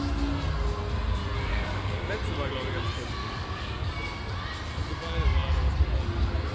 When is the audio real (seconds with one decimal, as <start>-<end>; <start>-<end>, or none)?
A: 0.0-1.5; 2.0-3.2; 3.9-6.5